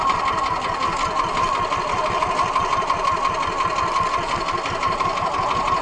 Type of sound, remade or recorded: recorded